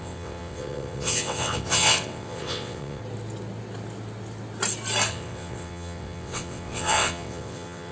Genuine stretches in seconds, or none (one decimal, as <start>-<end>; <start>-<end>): 3.0-5.1